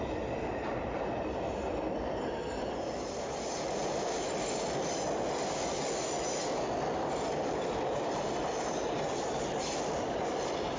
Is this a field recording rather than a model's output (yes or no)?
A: no